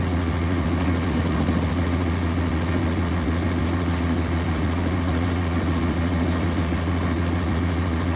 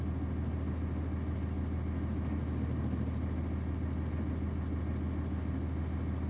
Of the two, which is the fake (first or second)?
first